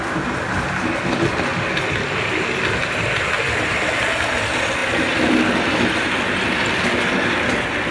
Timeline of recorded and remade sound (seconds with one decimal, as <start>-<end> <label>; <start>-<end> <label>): 0.0-7.9 recorded